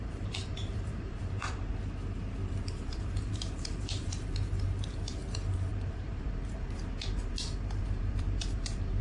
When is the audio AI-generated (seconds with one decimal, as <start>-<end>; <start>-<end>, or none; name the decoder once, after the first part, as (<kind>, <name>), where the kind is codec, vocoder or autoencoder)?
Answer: 0.0-1.6 (vocoder, BigVGAN v2); 2.6-5.2; 5.7-9.0